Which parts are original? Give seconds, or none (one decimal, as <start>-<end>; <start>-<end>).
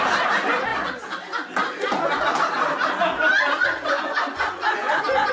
0.0-3.6